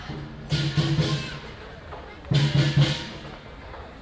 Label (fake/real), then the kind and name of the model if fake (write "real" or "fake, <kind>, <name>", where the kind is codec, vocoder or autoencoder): real